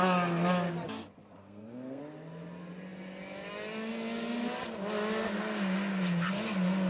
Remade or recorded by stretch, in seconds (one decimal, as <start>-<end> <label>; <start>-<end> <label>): 0.0-1.4 recorded; 1.4-2.0 remade; 2.0-6.9 recorded